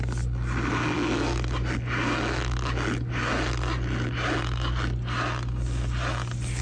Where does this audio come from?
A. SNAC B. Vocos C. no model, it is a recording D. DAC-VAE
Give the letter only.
C